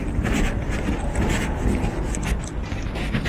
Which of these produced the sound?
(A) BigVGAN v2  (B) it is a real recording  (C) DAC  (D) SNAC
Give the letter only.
B